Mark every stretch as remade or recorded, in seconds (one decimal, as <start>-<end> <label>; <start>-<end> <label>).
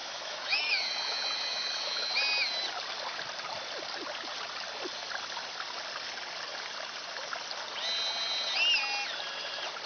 0.0-2.1 remade; 2.1-9.9 recorded